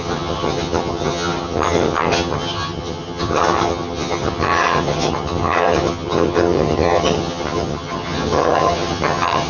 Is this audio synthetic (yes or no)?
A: yes